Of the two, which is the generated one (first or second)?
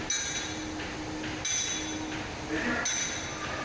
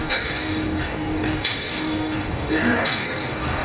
second